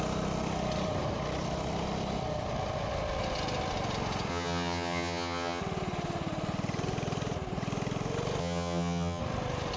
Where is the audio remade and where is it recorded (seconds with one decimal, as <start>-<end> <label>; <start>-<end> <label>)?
0.0-4.3 recorded; 4.3-5.6 remade; 5.6-8.4 recorded; 8.4-9.2 remade; 9.2-9.8 recorded